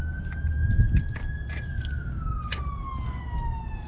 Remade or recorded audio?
recorded